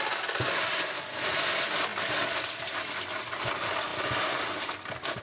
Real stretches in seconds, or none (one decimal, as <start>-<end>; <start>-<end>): 0.0-5.2

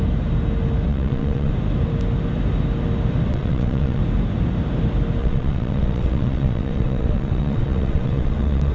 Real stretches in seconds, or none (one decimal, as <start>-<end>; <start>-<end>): 0.0-0.9; 1.5-3.3; 4.0-5.2

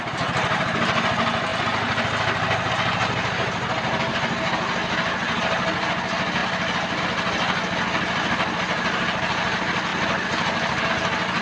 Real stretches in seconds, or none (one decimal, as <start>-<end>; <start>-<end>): 0.0-11.4

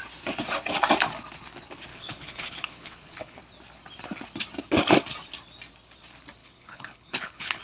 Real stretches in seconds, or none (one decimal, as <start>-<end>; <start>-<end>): 0.0-1.9; 3.4-6.4

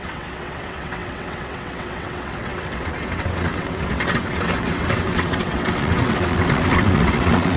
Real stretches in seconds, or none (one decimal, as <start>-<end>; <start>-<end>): none

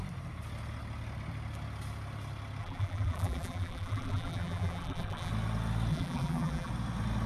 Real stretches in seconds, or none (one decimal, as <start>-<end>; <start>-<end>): 0.0-2.6; 5.3-5.9; 6.7-7.3

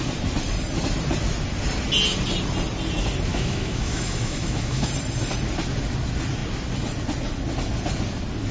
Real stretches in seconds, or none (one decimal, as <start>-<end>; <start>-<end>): 0.0-3.3; 4.9-8.5

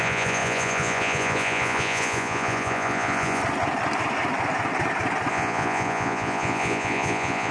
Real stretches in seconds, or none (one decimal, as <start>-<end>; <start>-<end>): 3.4-5.3